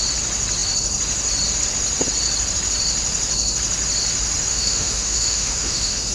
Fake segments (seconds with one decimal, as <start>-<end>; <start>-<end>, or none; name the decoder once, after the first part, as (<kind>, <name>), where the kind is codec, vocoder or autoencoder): 4.5-6.1 (autoencoder, DAC-VAE)